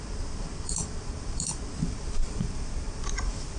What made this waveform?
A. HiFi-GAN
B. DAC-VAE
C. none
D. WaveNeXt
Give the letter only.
C